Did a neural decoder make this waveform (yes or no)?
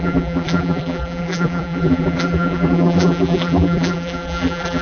yes